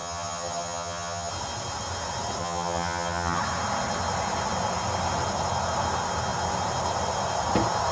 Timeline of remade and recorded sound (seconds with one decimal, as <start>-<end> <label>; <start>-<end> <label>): 0.0-1.3 remade; 1.3-2.4 recorded; 2.4-3.4 remade; 3.4-7.9 recorded